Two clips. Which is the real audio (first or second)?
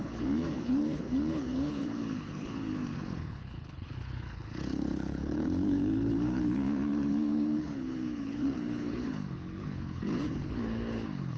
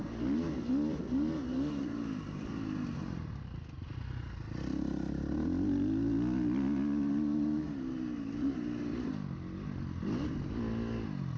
second